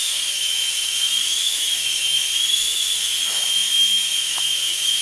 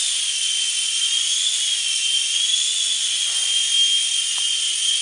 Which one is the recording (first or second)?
second